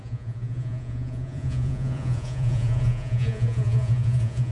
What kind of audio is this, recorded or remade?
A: remade